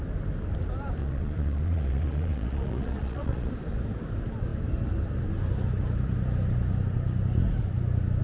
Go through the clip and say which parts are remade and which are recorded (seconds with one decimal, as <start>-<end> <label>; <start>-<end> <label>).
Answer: 0.0-1.0 recorded; 1.0-3.5 remade; 3.5-8.2 recorded